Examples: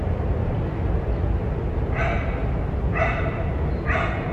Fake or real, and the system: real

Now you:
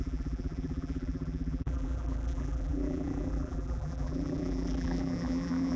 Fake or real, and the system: fake, vocoder, BigVGAN v2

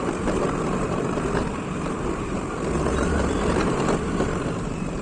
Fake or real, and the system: fake, vocoder, BigVGAN v2